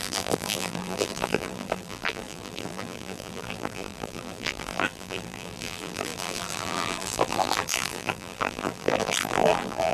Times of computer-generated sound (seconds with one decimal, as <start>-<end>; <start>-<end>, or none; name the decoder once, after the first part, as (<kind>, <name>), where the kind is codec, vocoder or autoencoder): 0.0-9.9 (vocoder, BigVGAN v2)

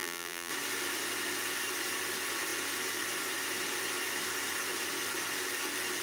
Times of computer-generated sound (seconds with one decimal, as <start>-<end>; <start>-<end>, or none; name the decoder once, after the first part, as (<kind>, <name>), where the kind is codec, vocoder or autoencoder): 0.0-0.5 (vocoder, BigVGAN v2)

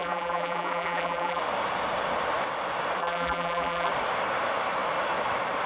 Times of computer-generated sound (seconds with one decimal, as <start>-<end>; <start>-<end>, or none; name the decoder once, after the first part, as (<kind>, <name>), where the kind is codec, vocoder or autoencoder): 0.0-1.4 (vocoder, BigVGAN v2); 3.0-3.9

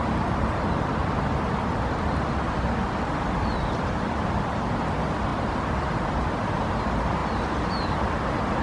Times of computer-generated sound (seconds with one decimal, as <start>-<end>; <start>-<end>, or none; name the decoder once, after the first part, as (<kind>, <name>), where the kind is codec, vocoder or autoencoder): 1.0-4.8 (vocoder, BigVGAN v2); 5.3-6.3; 7.2-8.1

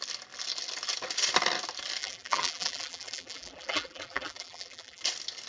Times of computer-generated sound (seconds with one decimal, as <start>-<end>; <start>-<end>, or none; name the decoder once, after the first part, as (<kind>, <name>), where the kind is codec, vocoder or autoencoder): 2.0-5.0 (vocoder, BigVGAN v2)

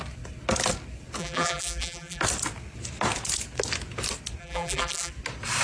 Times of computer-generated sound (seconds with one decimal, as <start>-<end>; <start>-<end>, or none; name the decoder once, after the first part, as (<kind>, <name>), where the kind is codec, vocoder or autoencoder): 1.2-2.2 (vocoder, BigVGAN v2); 4.4-5.1